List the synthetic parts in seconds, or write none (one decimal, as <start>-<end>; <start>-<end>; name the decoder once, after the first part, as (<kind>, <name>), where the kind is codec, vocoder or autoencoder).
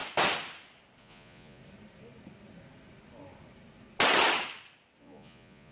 1.0-1.6 (vocoder, Vocos); 5.0-5.7